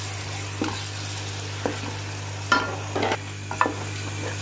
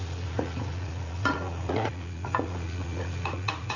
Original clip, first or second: first